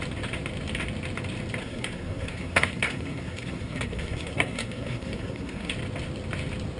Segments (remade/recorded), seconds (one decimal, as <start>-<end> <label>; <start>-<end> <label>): 0.0-1.6 recorded; 1.6-5.7 remade; 5.7-6.8 recorded